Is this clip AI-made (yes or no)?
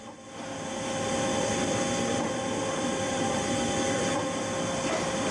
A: no